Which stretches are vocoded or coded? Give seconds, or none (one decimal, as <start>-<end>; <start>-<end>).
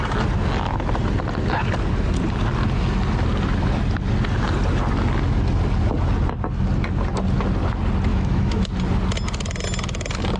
8.1-8.7